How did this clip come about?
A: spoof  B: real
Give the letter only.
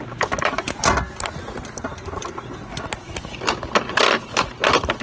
B